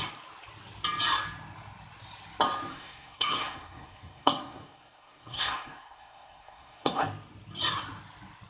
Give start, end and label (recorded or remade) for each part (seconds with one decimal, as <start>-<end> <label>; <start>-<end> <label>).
0.0-2.7 recorded; 2.7-7.0 remade; 7.0-8.5 recorded